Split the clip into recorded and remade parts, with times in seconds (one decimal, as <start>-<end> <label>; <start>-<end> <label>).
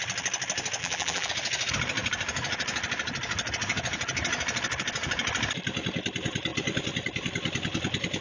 0.0-0.8 recorded; 0.8-1.3 remade; 1.3-8.2 recorded